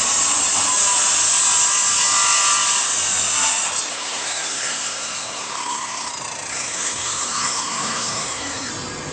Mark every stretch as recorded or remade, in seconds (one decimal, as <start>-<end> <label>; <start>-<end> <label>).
0.0-3.9 recorded; 3.9-6.1 remade; 6.1-6.5 recorded; 6.5-8.7 remade; 8.7-9.1 recorded